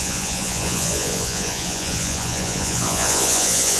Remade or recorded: remade